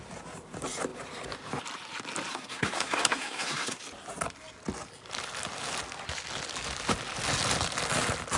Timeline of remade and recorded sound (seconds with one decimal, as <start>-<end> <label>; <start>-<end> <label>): 0.0-2.3 recorded; 2.3-3.8 remade; 3.8-8.4 recorded